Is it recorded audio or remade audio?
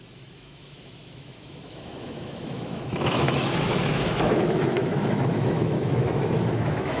remade